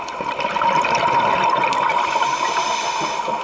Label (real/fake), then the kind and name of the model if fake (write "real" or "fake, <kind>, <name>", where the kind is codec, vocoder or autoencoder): real